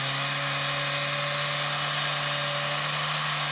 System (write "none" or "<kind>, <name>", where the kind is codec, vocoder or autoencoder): none